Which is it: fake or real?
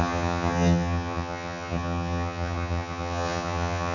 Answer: fake